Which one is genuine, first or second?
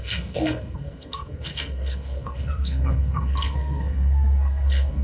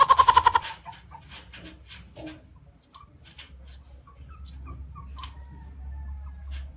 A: second